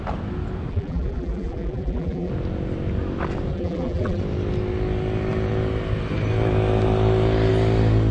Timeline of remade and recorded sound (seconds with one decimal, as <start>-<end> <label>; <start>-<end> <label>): 0.0-0.7 recorded; 0.7-2.3 remade; 2.3-3.5 recorded; 3.5-4.2 remade; 4.2-8.1 recorded